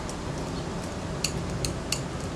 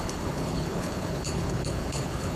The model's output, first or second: second